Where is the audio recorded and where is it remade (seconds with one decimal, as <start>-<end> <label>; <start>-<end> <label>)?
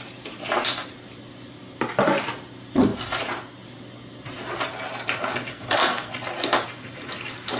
0.0-5.5 recorded; 5.5-6.1 remade; 6.1-7.6 recorded